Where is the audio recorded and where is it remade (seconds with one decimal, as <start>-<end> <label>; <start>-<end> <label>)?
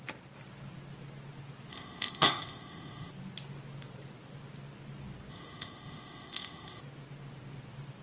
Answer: 0.0-1.7 recorded; 1.7-3.1 remade; 3.1-5.3 recorded; 5.3-6.8 remade; 6.8-8.0 recorded